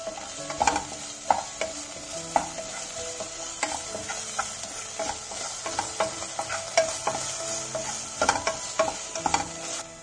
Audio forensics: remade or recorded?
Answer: recorded